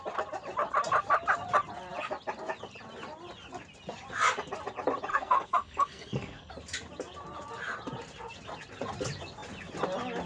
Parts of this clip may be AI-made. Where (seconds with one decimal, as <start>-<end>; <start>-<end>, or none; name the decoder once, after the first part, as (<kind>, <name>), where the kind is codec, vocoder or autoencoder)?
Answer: 5.1-6.5 (codec, SNAC)

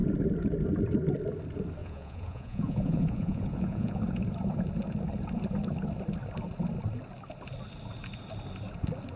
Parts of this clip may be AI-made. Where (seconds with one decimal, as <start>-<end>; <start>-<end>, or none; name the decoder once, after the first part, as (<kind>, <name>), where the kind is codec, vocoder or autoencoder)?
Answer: 1.8-4.0 (vocoder, Vocos)